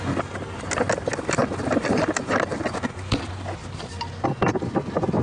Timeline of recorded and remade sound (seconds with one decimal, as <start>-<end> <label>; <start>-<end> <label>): 0.0-5.2 recorded